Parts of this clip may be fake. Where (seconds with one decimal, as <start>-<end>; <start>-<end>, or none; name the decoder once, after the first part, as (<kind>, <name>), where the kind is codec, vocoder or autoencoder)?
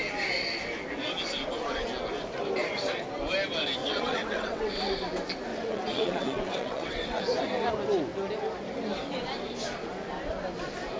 3.8-4.8 (vocoder, WaveNeXt); 5.5-7.2